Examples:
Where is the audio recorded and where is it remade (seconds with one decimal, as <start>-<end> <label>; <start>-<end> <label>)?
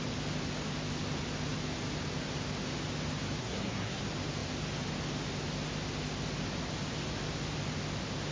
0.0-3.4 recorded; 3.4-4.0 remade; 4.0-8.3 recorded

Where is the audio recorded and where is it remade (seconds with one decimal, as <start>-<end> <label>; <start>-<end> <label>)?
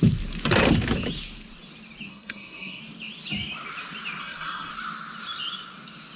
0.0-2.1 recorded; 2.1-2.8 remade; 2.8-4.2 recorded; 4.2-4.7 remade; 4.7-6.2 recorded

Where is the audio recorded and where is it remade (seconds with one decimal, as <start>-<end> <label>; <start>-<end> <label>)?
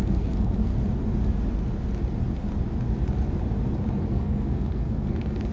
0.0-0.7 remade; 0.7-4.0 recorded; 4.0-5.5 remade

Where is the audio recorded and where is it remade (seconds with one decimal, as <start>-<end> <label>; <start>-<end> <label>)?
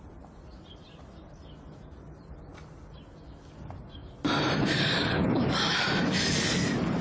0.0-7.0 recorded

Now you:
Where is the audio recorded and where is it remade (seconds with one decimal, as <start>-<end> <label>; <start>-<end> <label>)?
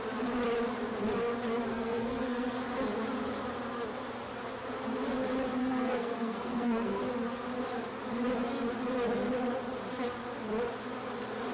0.0-1.7 recorded; 1.7-2.6 remade; 2.6-5.6 recorded; 5.6-7.0 remade; 7.0-11.5 recorded